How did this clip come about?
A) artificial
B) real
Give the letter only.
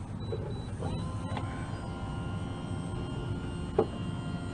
B